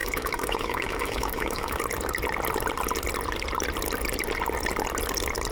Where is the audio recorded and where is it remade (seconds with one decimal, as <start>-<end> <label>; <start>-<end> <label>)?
0.0-1.8 remade; 1.8-5.5 recorded